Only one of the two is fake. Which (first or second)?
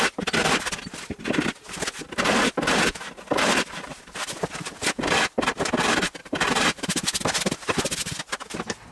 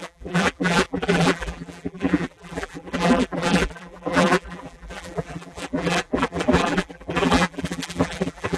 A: second